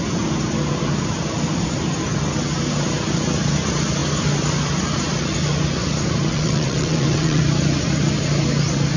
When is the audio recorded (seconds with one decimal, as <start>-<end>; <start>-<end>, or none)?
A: 0.0-6.3; 7.4-9.0